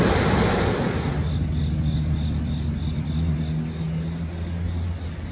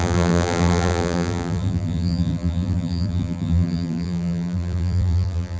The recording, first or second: first